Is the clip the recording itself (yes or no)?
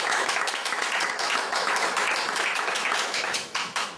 no